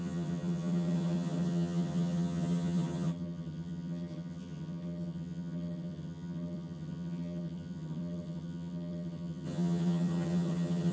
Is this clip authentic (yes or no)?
no